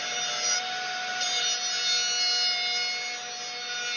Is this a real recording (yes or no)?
yes